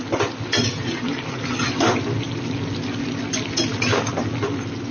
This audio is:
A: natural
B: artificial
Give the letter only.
A